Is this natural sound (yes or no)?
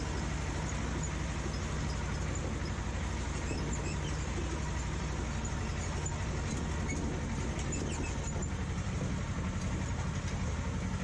yes